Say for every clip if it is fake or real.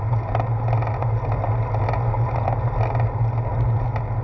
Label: real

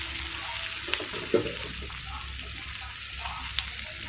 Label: real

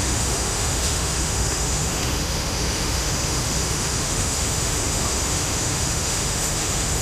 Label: fake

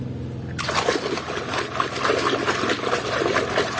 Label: real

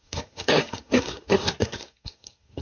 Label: fake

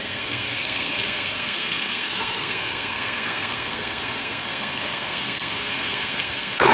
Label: fake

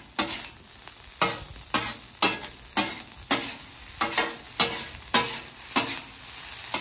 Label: real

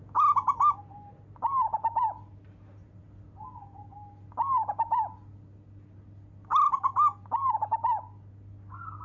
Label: real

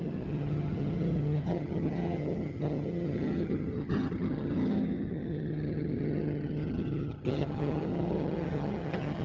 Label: fake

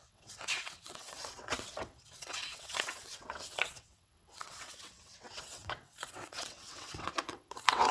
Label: fake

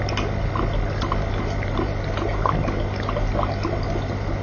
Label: real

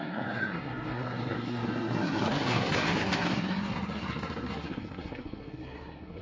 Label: fake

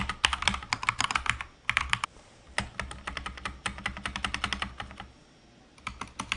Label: real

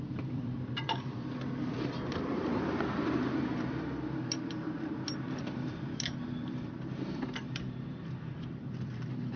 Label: fake